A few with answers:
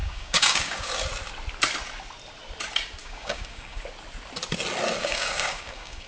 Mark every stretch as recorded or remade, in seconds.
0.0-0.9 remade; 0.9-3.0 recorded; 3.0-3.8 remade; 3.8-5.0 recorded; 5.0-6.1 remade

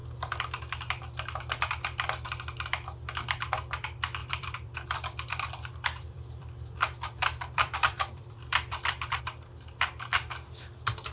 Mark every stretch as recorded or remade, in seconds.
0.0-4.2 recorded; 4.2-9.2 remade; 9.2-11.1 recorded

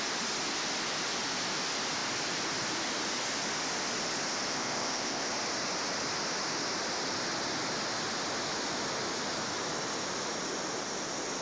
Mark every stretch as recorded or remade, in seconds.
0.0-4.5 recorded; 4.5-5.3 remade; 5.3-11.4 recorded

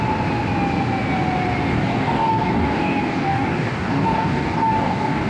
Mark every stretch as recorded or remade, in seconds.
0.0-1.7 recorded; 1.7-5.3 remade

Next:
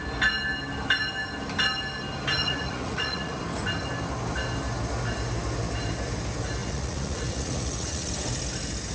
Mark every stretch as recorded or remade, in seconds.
0.0-2.4 recorded; 2.4-3.4 remade; 3.4-6.6 recorded; 6.6-8.1 remade; 8.1-8.9 recorded

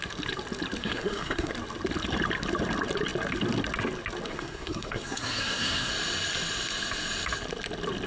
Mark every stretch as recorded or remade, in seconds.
0.0-0.8 recorded; 0.8-1.5 remade; 1.5-4.3 recorded; 4.3-5.9 remade; 5.9-8.1 recorded

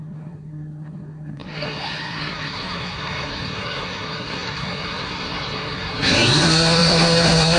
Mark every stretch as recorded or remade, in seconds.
0.0-7.6 remade

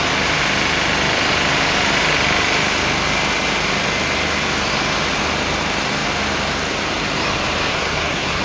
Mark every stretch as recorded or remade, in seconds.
0.0-7.7 recorded; 7.7-8.4 remade